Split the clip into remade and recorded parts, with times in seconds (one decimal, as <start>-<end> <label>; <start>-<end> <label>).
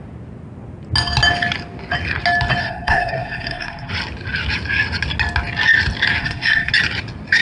0.0-2.6 recorded; 2.6-3.9 remade; 3.9-6.2 recorded; 6.2-6.7 remade; 6.7-7.4 recorded